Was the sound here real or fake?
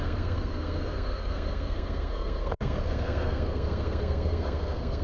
fake